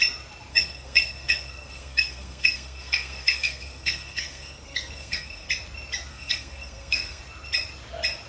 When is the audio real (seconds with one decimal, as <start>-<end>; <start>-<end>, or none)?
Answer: 0.0-0.5; 5.5-6.1; 7.2-8.3